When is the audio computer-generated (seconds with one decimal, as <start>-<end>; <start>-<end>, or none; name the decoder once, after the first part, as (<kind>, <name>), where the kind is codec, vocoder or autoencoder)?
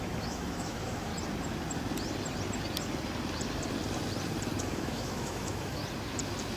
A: 0.0-1.1 (autoencoder, DAC-VAE); 4.6-5.8